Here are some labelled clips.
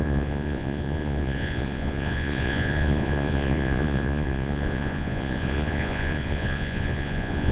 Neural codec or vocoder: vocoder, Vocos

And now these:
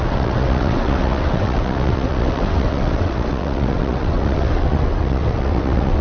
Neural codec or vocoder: vocoder, WaveNeXt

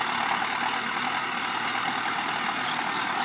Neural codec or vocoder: none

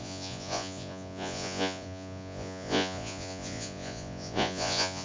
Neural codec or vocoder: vocoder, Vocos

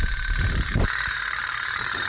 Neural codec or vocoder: vocoder, BigVGAN v2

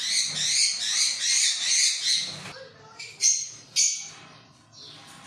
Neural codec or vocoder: none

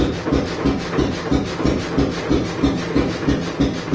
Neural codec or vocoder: none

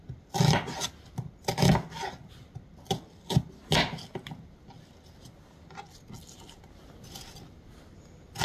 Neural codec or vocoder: none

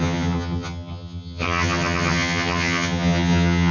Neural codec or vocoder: vocoder, HiFi-GAN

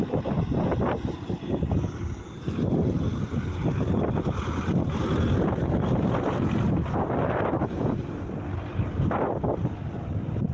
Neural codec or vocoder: none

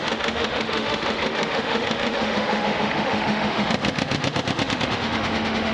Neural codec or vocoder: autoencoder, DAC-VAE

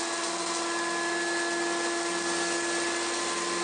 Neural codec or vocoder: none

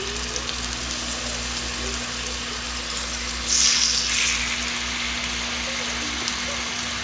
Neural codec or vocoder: none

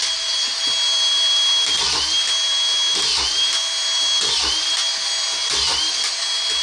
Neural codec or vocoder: none